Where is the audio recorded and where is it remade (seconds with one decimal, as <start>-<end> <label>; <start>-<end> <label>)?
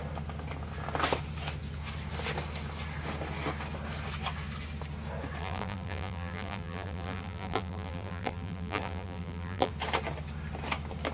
0.0-5.4 recorded; 5.4-9.7 remade; 9.7-11.1 recorded